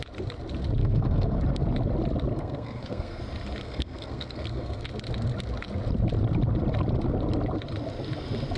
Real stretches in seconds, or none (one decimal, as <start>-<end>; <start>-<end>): 0.0-0.8; 1.4-2.3; 3.2-3.6; 4.8-8.6

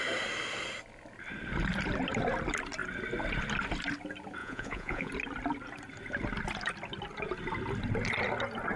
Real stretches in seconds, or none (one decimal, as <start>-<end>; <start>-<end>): 0.0-4.4; 5.1-8.8

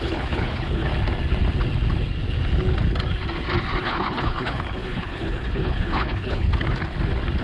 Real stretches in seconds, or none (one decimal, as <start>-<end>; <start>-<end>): 0.9-3.8; 6.5-7.4

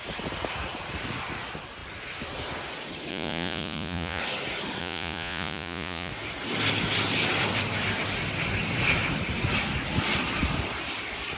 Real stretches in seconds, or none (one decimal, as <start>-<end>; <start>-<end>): 0.0-3.1; 4.2-4.8; 6.1-11.4

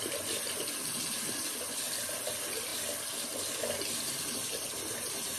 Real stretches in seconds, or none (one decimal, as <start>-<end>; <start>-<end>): 0.0-5.4

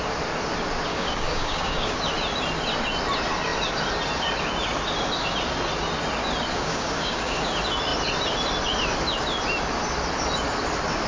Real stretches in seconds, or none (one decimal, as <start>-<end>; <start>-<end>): 0.0-0.9; 2.0-6.5; 7.5-11.1

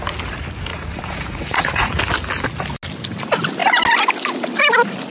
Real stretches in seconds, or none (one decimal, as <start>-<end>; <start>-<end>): 0.0-0.7; 2.0-5.1